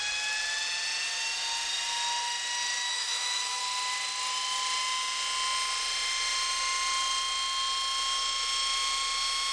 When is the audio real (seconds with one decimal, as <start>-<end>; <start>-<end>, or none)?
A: 0.0-2.9; 3.6-9.5